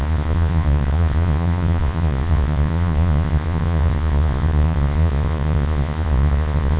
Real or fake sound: fake